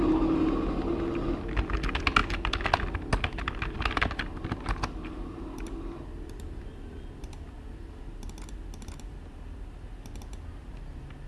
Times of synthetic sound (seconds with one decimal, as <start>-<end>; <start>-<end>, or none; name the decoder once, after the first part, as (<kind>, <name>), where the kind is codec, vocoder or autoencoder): none